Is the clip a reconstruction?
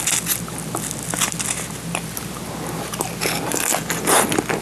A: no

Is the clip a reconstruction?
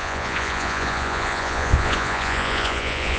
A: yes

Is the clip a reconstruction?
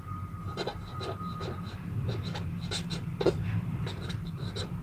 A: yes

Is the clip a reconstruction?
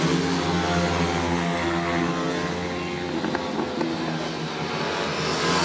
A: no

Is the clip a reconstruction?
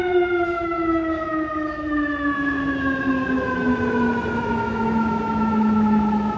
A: yes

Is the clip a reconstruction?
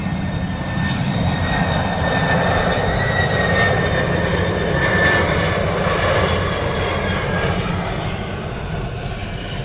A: no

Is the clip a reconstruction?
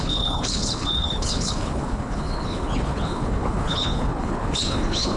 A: yes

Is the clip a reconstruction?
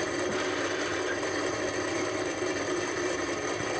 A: yes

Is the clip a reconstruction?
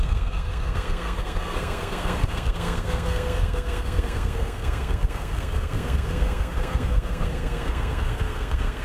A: yes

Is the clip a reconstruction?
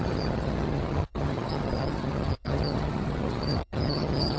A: yes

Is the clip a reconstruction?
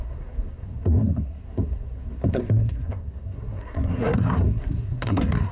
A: yes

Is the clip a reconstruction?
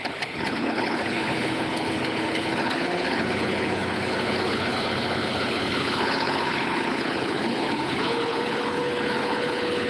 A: yes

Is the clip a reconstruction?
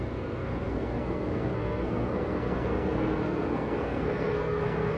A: yes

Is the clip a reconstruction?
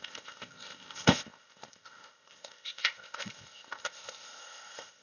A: yes